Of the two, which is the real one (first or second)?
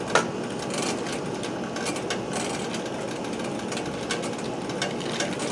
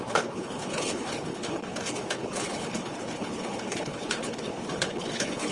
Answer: first